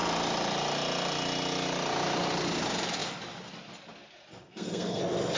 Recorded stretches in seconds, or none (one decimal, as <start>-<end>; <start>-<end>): 0.0-4.5; 5.0-5.4